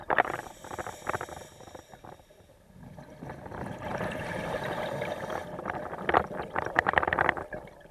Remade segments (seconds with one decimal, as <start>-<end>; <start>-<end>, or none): 0.0-0.5; 3.9-4.8